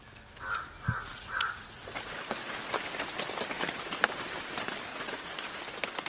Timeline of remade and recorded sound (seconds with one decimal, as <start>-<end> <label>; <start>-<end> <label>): 0.0-1.1 recorded; 1.1-2.5 remade; 2.5-4.9 recorded; 4.9-5.6 remade; 5.6-6.1 recorded